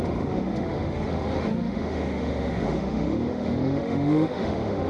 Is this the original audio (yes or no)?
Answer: no